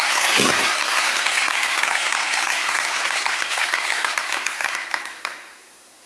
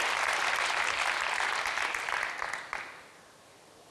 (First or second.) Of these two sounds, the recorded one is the second